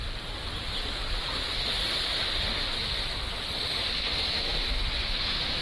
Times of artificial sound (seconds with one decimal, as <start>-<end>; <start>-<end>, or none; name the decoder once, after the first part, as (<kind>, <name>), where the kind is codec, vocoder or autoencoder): 4.1-5.6 (autoencoder, DAC-VAE)